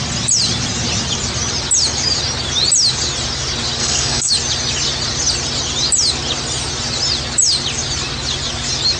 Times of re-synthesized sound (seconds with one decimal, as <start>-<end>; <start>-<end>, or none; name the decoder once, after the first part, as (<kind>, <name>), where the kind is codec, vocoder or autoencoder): 3.8-4.3 (codec, SNAC)